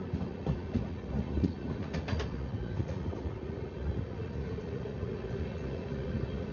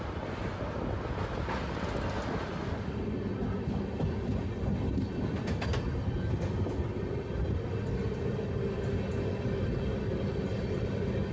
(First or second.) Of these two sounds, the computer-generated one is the first